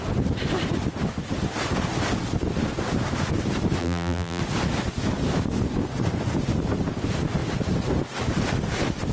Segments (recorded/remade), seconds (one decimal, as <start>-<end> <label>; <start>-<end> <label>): 0.0-3.8 recorded; 3.8-4.4 remade; 4.4-9.1 recorded